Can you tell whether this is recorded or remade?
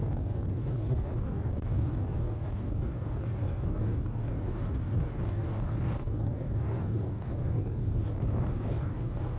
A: remade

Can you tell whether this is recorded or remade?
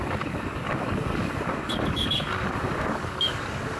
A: remade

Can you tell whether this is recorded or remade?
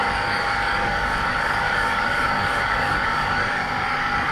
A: remade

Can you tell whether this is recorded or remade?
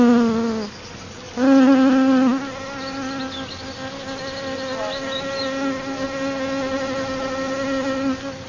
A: recorded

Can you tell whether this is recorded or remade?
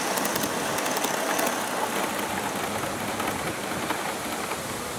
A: recorded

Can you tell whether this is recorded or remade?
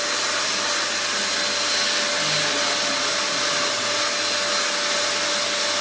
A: recorded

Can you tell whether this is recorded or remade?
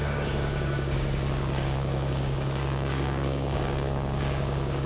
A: remade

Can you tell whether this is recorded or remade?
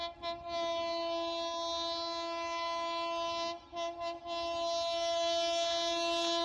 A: recorded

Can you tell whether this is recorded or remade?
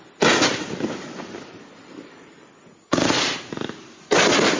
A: recorded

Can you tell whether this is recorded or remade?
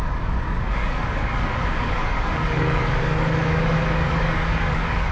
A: remade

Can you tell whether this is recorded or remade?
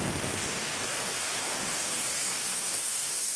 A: remade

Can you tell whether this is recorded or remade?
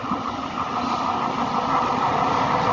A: recorded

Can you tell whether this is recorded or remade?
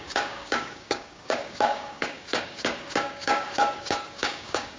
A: remade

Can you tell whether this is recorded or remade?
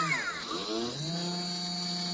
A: recorded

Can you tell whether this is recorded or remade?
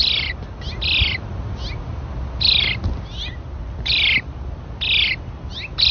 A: recorded